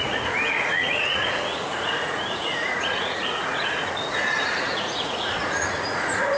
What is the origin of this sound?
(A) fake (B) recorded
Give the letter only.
A